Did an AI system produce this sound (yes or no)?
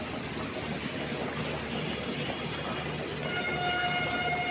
no